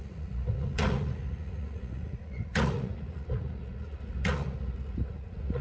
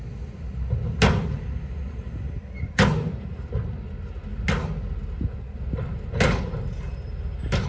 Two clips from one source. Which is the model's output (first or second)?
first